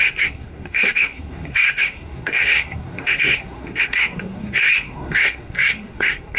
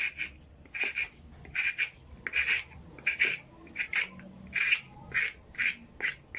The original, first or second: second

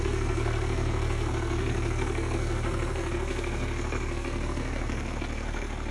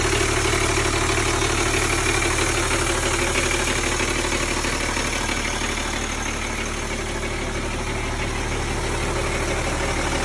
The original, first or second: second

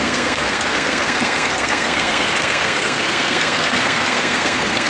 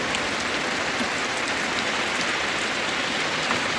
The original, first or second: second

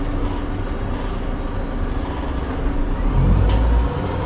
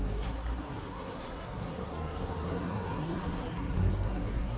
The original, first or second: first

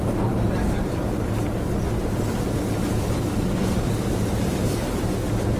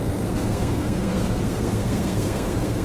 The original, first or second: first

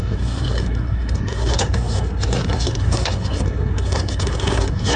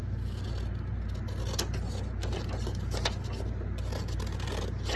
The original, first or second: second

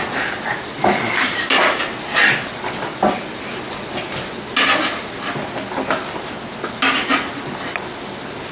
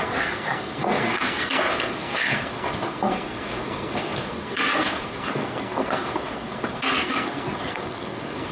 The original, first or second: first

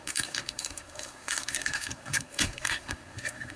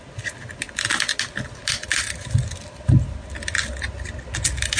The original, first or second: second